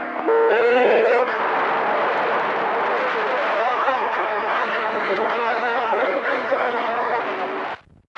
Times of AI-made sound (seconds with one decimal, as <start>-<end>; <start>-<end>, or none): 0.5-1.4; 3.6-7.2